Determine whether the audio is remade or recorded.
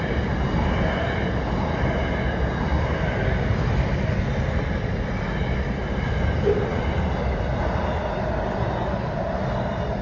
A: recorded